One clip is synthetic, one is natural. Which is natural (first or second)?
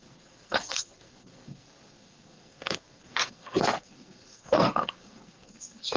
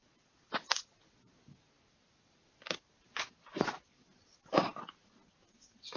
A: second